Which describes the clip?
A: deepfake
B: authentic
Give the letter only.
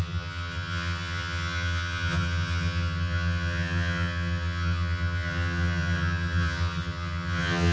A